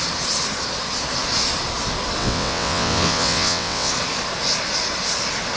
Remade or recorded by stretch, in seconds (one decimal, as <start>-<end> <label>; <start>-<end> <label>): 0.0-2.2 recorded; 2.2-3.9 remade; 3.9-5.6 recorded